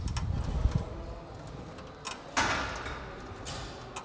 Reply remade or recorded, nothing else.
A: recorded